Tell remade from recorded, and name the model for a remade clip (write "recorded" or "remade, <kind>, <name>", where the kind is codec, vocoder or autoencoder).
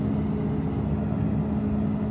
recorded